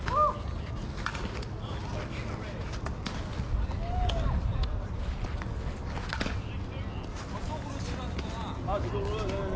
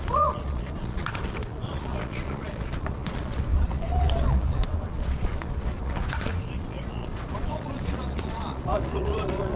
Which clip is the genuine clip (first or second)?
first